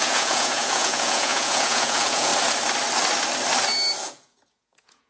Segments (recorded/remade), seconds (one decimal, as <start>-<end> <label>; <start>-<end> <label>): 0.0-2.3 remade; 2.3-4.0 recorded; 4.0-5.1 remade